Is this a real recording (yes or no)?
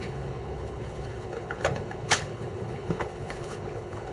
no